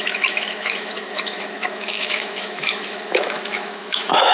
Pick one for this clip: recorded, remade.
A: remade